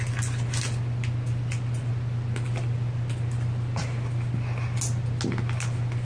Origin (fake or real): real